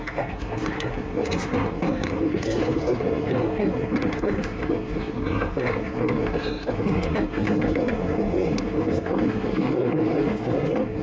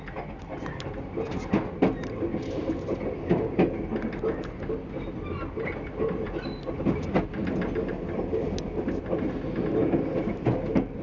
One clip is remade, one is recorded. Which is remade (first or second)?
first